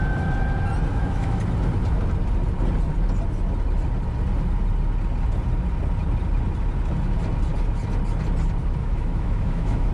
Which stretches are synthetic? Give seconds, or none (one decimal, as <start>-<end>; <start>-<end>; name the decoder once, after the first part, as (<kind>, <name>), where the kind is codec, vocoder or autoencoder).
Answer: 0.9-1.4 (autoencoder, DAC-VAE); 8.8-9.9